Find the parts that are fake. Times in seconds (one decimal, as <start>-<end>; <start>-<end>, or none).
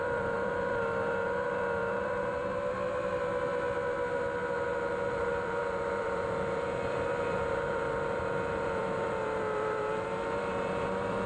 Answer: 0.0-2.4; 5.3-11.3